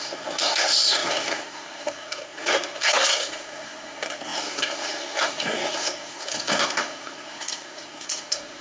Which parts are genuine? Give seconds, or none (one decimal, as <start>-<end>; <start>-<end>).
none